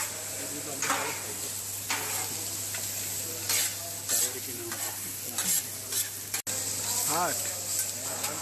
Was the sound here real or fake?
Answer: real